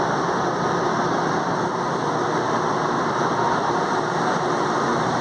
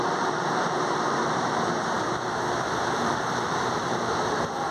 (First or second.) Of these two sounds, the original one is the first